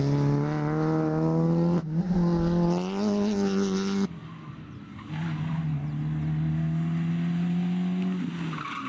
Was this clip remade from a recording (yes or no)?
no